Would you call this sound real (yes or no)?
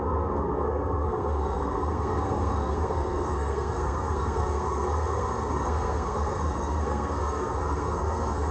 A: no